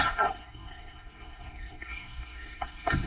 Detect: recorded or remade remade